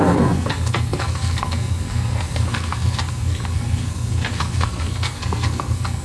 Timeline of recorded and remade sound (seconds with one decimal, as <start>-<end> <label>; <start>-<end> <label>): 0.0-6.0 remade